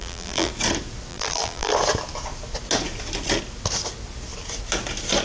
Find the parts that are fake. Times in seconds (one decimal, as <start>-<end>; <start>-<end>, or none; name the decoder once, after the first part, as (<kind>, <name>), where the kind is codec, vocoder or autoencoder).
0.0-0.5 (vocoder, BigVGAN v2); 1.1-1.7